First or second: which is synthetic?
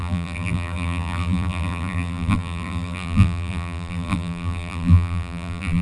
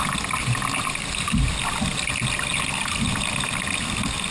first